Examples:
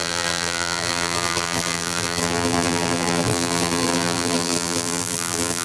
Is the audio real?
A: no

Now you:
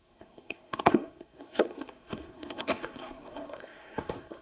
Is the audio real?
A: no